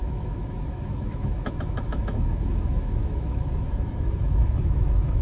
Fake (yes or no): yes